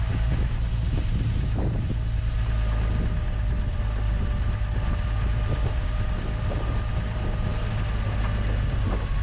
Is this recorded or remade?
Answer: recorded